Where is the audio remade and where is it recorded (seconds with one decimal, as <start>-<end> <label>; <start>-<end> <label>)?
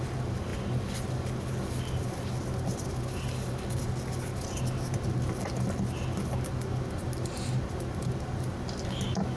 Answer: 0.0-9.4 recorded